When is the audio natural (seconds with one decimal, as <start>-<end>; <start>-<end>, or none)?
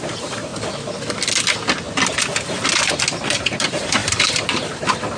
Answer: 0.5-3.3